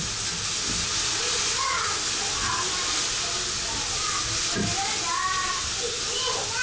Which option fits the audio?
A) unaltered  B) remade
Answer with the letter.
A